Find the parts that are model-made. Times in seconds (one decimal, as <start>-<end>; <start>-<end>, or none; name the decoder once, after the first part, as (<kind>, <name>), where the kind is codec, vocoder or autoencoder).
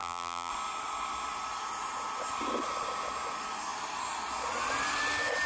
0.0-0.5 (vocoder, BigVGAN v2)